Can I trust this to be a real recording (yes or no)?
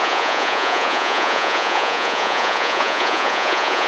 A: no